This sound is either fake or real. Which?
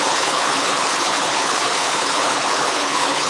fake